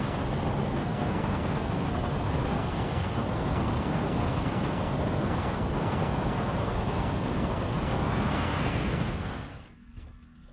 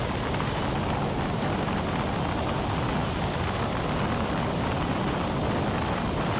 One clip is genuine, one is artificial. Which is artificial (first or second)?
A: first